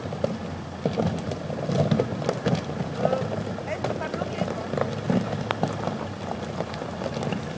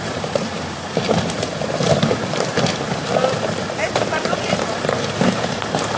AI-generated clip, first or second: second